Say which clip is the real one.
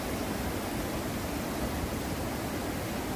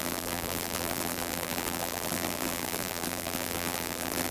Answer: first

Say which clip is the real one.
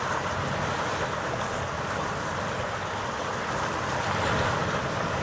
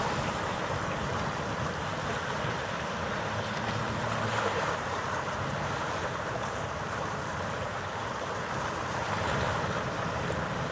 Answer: first